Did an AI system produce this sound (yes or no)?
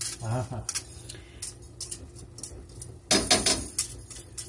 no